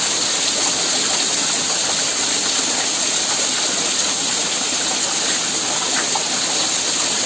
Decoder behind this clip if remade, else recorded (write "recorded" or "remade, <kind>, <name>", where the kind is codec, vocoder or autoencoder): recorded